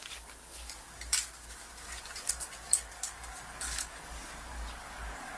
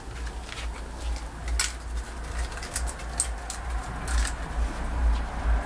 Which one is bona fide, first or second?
second